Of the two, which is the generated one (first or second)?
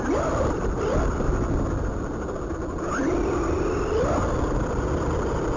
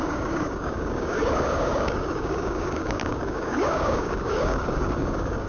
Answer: second